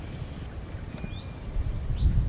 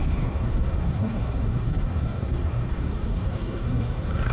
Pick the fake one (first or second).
second